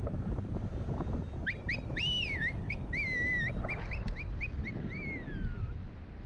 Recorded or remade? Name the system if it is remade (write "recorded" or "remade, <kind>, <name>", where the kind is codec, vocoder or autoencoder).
recorded